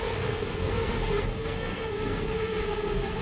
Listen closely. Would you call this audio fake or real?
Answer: fake